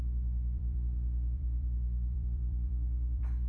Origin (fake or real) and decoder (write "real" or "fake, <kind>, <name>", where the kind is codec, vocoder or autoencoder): fake, vocoder, BigVGAN v2